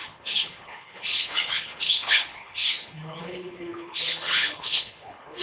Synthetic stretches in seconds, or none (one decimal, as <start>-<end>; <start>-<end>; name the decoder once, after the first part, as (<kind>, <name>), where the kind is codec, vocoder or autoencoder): 0.0-5.4 (codec, HILCodec)